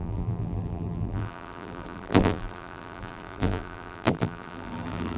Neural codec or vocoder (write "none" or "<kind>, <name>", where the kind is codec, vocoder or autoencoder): vocoder, BigVGAN v2